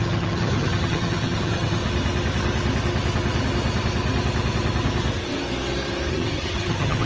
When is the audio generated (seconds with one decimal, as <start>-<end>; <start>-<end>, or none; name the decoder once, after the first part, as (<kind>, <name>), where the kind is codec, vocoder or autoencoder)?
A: 0.0-1.8 (vocoder, HiFi-GAN); 6.1-7.1